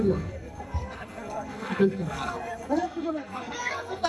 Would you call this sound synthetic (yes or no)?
yes